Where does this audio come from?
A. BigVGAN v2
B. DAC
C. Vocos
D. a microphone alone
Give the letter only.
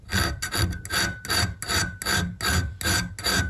D